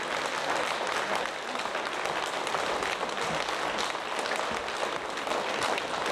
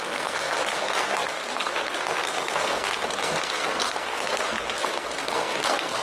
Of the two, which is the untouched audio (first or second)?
first